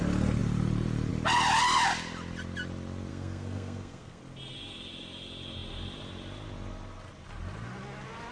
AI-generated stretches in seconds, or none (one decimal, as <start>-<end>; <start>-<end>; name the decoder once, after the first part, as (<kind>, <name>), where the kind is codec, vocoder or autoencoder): 3.1-4.2 (codec, SNAC)